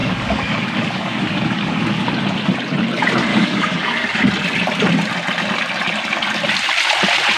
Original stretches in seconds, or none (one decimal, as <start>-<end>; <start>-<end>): 2.1-3.3; 4.2-7.4